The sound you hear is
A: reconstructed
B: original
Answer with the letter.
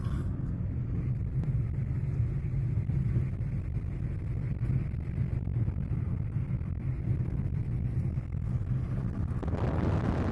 B